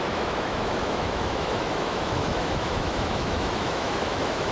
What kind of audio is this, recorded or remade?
remade